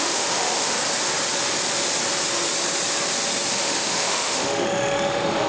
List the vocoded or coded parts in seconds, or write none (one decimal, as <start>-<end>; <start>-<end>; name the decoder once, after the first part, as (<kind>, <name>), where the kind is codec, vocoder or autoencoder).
0.0-0.8 (autoencoder, DAC-VAE); 3.5-5.5